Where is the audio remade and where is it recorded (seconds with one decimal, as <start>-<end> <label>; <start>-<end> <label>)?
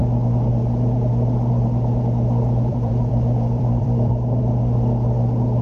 0.0-2.7 recorded; 2.7-4.4 remade; 4.4-5.6 recorded